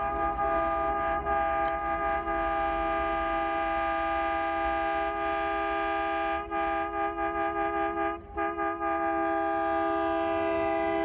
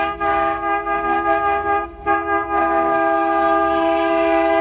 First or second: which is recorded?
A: first